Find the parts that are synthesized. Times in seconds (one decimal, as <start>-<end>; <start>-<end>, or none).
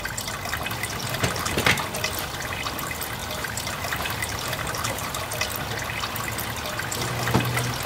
1.0-1.7; 3.2-5.1